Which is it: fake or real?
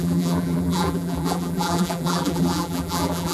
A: fake